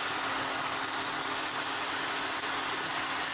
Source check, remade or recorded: recorded